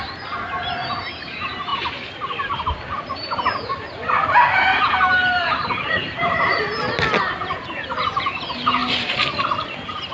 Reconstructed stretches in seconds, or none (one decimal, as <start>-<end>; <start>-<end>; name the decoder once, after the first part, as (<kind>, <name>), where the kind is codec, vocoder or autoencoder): 1.7-6.6 (vocoder, BigVGAN v2)